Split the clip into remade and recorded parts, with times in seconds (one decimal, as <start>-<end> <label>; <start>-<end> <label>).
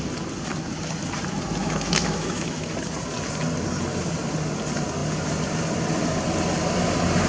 0.0-1.6 recorded; 1.6-2.7 remade; 2.7-7.3 recorded